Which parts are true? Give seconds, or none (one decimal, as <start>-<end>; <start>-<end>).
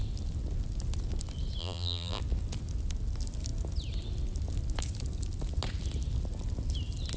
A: 0.0-1.6; 2.2-7.2